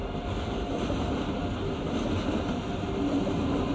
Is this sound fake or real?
real